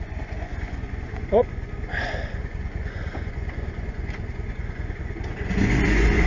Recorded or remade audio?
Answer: remade